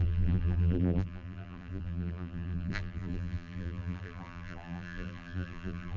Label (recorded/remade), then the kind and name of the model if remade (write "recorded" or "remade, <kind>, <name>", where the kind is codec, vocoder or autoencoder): remade, vocoder, BigVGAN v2